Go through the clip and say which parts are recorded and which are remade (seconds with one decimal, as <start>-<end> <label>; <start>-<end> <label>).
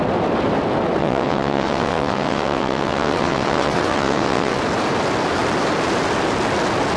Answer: 0.0-1.0 recorded; 1.0-4.6 remade; 4.6-7.0 recorded